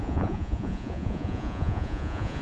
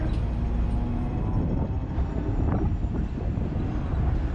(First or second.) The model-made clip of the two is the first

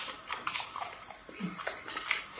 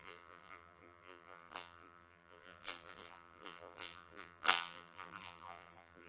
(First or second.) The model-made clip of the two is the second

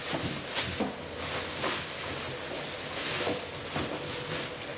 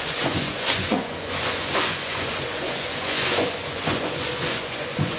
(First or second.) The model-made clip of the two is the second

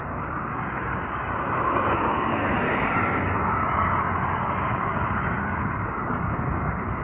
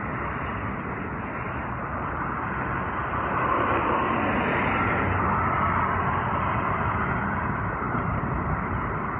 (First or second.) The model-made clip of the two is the first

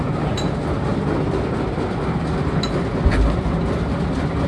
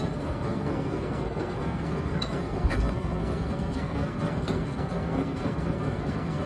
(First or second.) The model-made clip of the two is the second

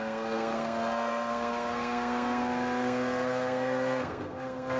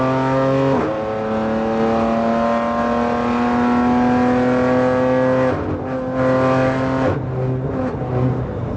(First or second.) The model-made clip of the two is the first